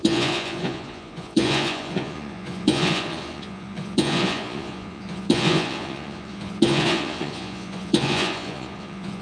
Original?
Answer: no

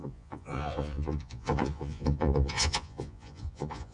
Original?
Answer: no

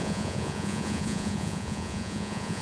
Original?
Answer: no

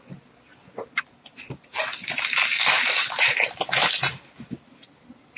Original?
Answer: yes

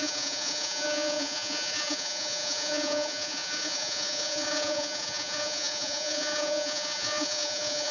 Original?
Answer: no